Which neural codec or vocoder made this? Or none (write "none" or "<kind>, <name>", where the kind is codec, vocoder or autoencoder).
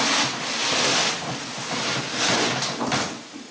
none